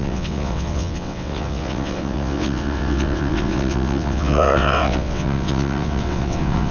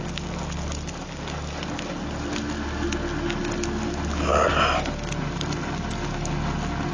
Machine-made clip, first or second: first